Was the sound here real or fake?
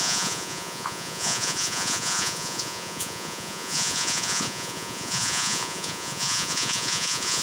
fake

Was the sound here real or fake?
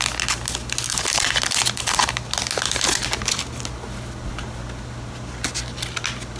real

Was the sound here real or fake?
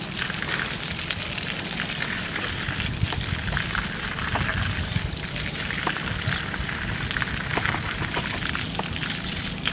real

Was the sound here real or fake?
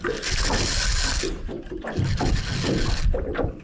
real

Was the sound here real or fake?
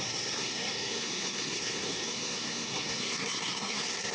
fake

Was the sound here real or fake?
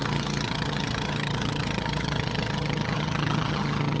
fake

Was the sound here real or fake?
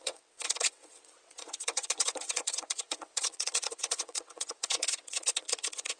fake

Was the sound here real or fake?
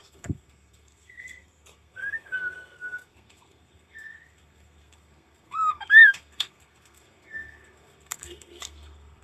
fake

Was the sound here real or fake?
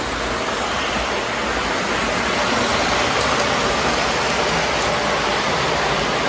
real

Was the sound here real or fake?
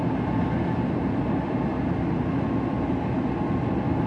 real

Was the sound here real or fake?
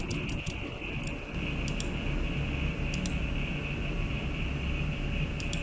real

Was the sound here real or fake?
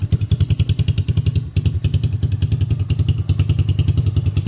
real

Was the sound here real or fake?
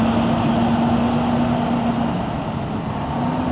real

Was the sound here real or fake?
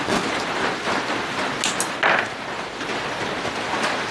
real